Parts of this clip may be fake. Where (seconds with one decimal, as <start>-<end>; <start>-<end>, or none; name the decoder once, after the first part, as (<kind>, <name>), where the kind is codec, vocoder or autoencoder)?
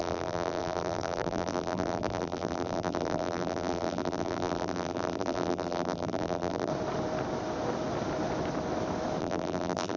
0.0-6.7 (vocoder, BigVGAN v2); 9.2-10.0